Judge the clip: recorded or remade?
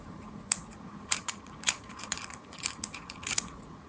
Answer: remade